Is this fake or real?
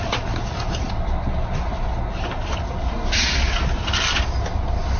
real